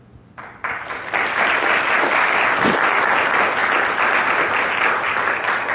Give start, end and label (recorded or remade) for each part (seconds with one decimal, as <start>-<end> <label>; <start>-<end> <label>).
0.0-5.7 recorded